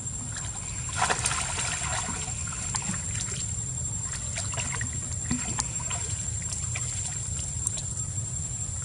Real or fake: real